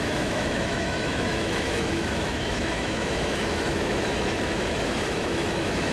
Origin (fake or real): fake